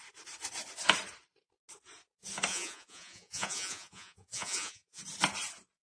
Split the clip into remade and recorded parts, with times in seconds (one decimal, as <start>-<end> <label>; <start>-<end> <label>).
0.0-2.5 recorded; 2.5-5.0 remade; 5.0-5.8 recorded